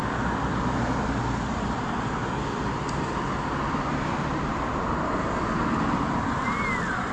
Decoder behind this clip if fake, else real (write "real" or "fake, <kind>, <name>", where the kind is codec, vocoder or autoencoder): real